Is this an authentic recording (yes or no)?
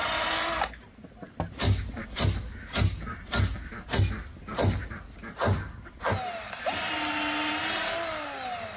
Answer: yes